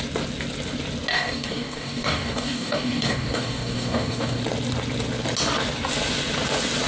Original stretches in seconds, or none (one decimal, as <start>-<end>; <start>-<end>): 0.0-1.1; 4.4-6.9